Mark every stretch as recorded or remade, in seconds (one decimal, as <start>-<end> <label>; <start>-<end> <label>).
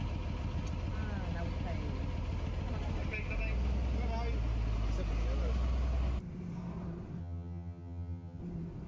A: 0.0-7.2 recorded; 7.2-8.4 remade; 8.4-8.9 recorded